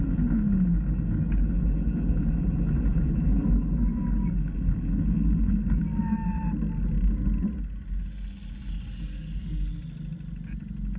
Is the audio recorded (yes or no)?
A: yes